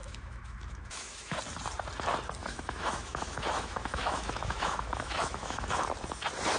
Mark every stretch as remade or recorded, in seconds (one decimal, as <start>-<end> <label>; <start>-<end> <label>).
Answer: 0.0-1.4 remade; 1.4-2.4 recorded; 2.4-5.7 remade; 5.7-6.6 recorded